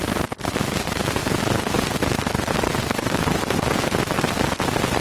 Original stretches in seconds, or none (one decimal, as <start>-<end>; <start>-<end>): 0.0-5.0